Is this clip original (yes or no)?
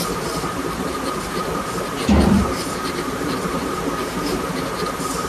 no